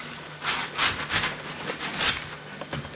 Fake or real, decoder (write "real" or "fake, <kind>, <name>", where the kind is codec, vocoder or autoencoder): real